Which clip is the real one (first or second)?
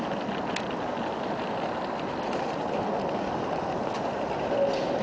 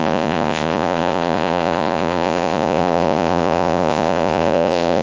first